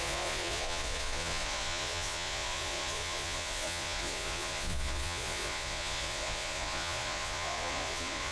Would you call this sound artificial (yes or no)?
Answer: yes